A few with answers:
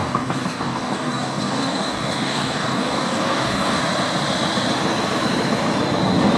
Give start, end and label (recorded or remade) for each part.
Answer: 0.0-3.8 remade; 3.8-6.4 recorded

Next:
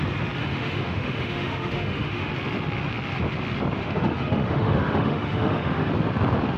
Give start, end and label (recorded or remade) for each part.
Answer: 0.0-0.4 recorded; 0.4-2.3 remade; 2.3-3.8 recorded; 3.8-5.9 remade; 5.9-6.6 recorded

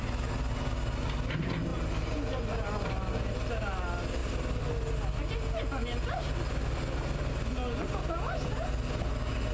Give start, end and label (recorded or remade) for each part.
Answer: 0.0-9.5 recorded

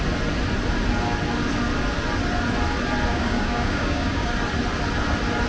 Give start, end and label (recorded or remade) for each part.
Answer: 0.0-3.1 recorded; 3.1-4.3 remade; 4.3-5.5 recorded

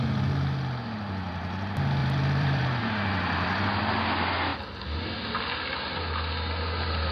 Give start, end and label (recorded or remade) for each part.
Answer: 0.0-2.0 recorded; 2.0-2.8 remade; 2.8-7.1 recorded

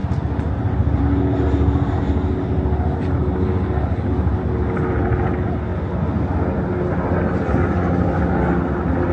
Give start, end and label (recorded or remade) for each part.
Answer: 0.0-9.1 recorded